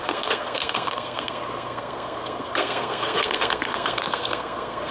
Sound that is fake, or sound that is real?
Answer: fake